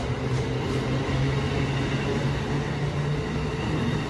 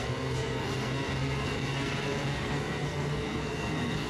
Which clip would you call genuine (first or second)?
first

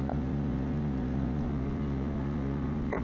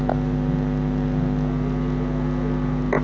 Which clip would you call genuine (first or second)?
second